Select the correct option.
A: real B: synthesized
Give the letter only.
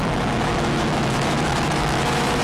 B